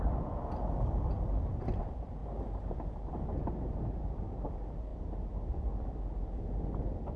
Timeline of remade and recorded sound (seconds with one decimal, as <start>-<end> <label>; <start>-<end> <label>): 0.0-2.2 remade; 2.2-3.1 recorded; 3.1-7.2 remade